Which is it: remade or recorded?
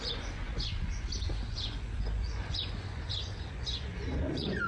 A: remade